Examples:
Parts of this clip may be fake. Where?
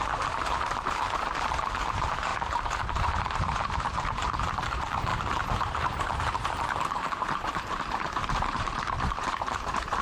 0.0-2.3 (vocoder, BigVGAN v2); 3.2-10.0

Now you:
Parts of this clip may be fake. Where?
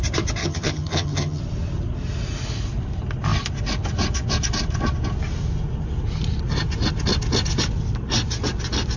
0.4-1.4 (vocoder, HiFi-GAN)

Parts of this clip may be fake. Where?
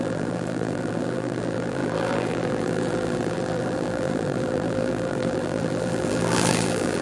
0.0-7.0 (vocoder, BigVGAN v2)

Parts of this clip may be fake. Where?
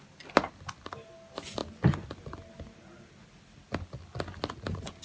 none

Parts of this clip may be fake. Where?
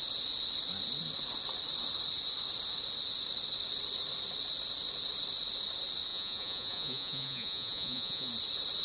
6.1-8.3 (vocoder, Vocos)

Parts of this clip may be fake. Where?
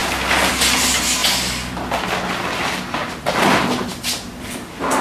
none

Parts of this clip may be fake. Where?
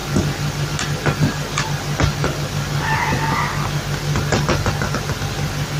none